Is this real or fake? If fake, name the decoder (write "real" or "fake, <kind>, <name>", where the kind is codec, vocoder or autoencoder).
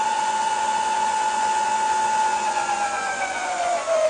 fake, vocoder, Vocos